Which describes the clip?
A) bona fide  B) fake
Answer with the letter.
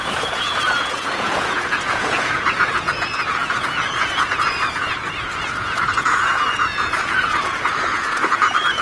B